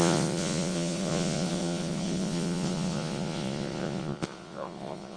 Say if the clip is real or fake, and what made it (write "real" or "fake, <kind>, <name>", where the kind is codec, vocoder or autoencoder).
fake, vocoder, Vocos